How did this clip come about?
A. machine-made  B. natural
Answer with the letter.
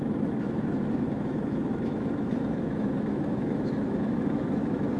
A